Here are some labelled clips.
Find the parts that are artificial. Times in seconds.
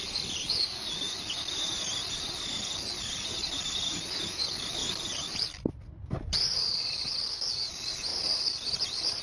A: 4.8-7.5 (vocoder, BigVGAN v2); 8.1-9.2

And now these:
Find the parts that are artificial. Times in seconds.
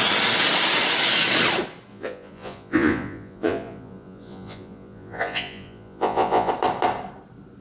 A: 1.9-6.5 (vocoder, Vocos)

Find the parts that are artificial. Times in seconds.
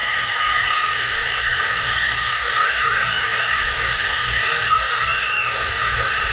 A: 0.0-6.3 (codec, DAC)